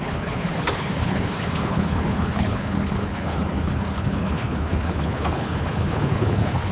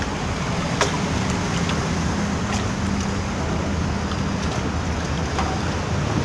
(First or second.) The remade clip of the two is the first